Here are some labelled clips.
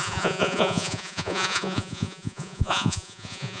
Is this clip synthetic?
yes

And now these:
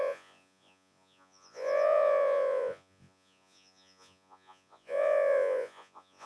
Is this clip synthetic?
yes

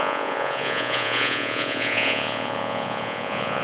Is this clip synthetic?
yes